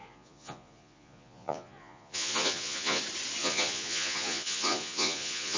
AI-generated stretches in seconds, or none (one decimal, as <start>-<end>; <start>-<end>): 0.0-3.0; 3.4-5.6